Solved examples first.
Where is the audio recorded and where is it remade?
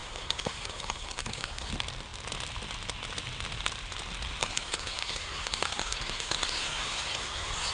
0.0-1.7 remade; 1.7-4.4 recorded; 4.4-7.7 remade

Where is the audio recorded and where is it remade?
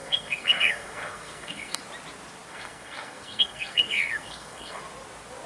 0.0-1.8 remade; 1.8-2.5 recorded; 2.5-4.8 remade; 4.8-5.5 recorded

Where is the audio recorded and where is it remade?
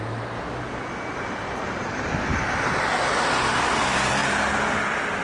0.0-5.2 recorded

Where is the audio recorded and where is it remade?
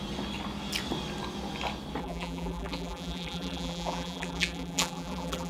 0.0-2.0 recorded; 2.0-5.5 remade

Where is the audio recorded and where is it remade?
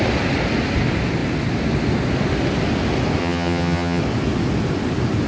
0.0-3.2 recorded; 3.2-4.0 remade; 4.0-5.3 recorded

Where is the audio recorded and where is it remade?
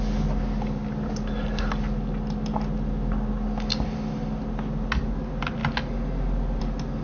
0.0-7.0 recorded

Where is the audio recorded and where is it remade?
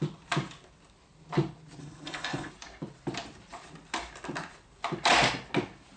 0.0-1.8 recorded; 1.8-2.5 remade; 2.5-6.0 recorded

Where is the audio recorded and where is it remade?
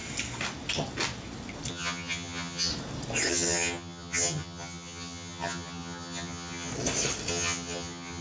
0.0-1.7 recorded; 1.7-2.7 remade; 2.7-3.3 recorded; 3.3-6.7 remade; 6.7-7.3 recorded; 7.3-8.2 remade